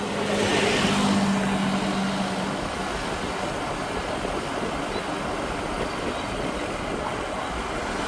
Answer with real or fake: real